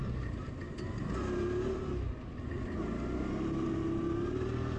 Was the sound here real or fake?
real